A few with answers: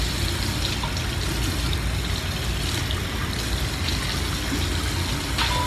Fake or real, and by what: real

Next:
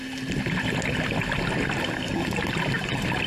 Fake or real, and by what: real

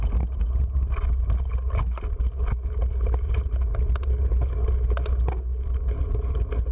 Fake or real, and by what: real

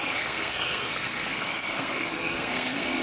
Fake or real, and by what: fake, codec, SNAC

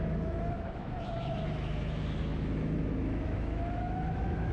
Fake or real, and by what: fake, autoencoder, DAC-VAE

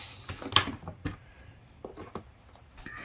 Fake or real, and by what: real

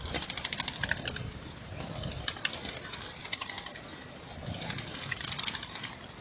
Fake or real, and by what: real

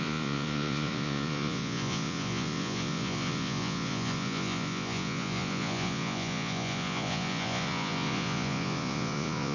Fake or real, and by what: fake, vocoder, Vocos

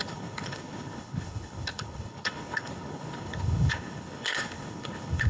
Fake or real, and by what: fake, codec, HILCodec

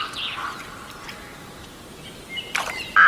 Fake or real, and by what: real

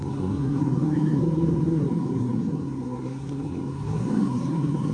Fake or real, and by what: fake, codec, SNAC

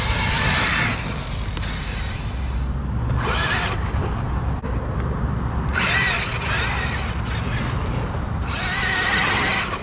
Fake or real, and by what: real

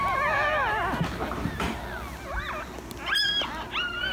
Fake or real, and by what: real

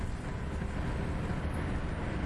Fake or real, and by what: real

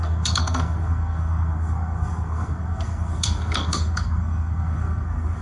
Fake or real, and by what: fake, codec, SNAC